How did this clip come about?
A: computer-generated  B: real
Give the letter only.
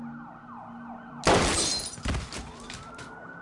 B